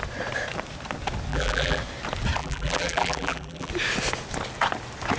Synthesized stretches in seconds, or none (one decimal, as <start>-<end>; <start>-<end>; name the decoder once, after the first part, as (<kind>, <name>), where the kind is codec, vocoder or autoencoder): 1.3-1.8 (vocoder, BigVGAN v2); 2.4-3.7